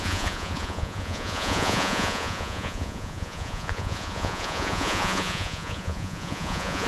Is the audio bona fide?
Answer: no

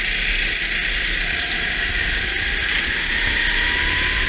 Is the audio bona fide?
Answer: yes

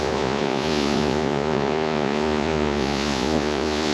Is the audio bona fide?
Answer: no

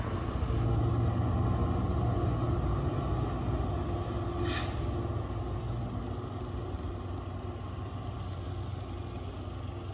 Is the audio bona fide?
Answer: yes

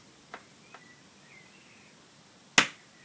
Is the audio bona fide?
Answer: yes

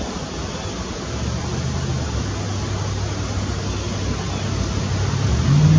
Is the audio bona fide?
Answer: yes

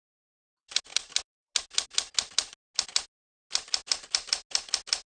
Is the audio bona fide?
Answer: yes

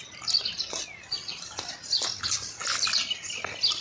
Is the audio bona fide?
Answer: yes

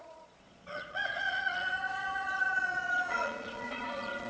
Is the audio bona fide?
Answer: no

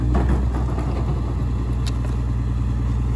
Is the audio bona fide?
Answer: yes